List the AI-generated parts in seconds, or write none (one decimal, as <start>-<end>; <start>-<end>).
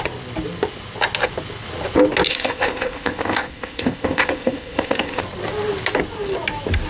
2.3-5.2